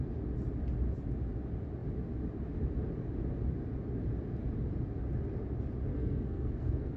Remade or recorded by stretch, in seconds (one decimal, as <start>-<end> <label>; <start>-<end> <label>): 0.0-5.9 recorded; 5.9-7.0 remade